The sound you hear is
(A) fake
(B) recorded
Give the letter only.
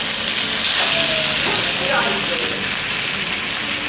B